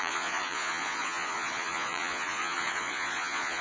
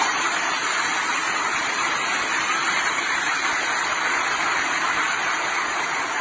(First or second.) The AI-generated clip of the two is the first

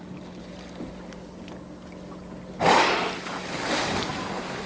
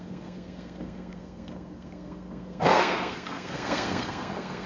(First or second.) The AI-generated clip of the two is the second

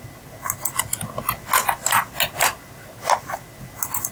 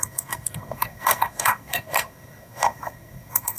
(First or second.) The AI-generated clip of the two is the second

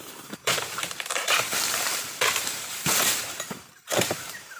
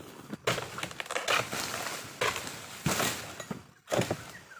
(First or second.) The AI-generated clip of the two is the first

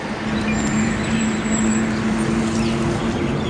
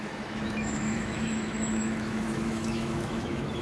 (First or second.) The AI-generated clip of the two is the second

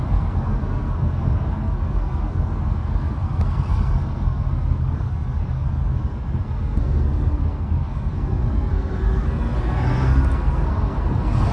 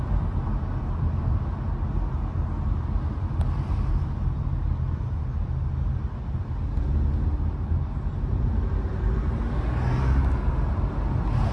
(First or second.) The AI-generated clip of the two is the first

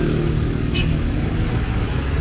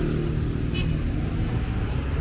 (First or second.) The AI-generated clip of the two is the first